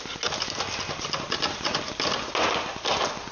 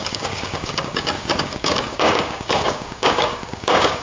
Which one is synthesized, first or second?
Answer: second